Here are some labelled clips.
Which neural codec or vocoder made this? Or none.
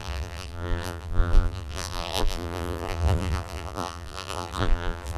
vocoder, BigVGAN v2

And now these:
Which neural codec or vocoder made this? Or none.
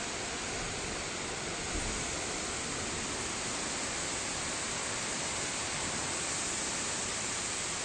none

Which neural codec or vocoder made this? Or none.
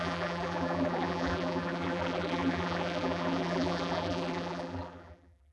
vocoder, BigVGAN v2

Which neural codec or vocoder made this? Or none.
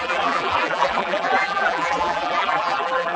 vocoder, BigVGAN v2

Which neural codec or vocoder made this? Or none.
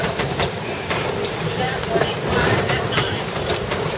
vocoder, BigVGAN v2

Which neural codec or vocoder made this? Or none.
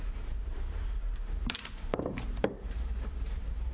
vocoder, BigVGAN v2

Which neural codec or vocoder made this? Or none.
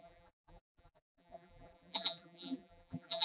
vocoder, BigVGAN v2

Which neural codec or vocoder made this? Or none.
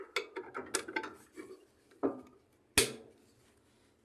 none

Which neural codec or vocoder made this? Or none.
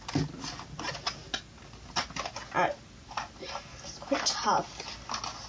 none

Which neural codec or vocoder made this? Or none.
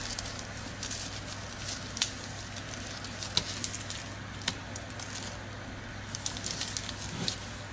none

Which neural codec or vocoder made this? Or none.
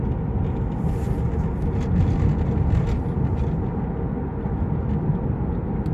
none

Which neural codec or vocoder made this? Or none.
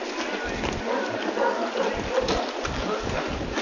none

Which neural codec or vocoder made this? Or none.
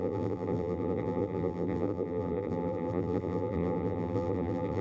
vocoder, BigVGAN v2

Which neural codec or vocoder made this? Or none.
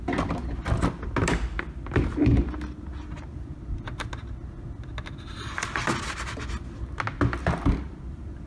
none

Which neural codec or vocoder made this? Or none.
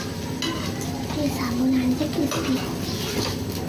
none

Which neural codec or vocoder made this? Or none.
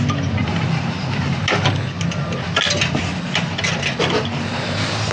none